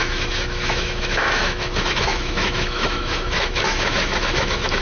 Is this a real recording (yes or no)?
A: no